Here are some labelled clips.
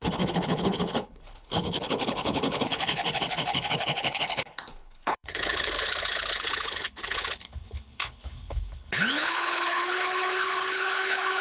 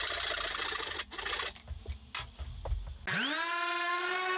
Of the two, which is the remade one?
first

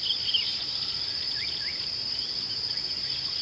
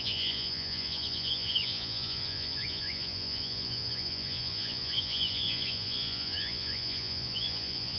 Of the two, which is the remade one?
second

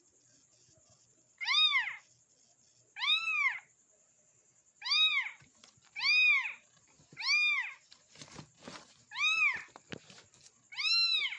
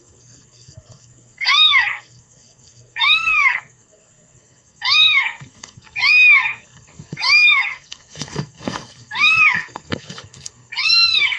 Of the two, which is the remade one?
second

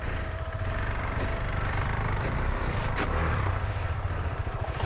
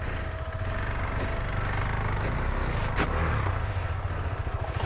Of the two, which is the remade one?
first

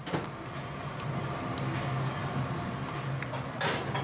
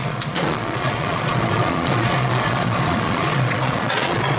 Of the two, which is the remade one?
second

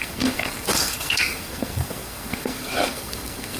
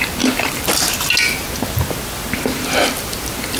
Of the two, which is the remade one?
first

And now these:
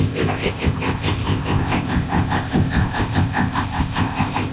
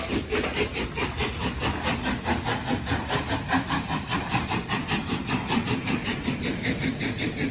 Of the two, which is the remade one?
first